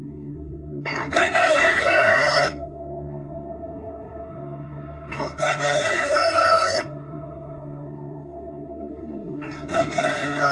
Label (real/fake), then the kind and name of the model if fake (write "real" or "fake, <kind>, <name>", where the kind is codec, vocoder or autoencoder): fake, codec, SNAC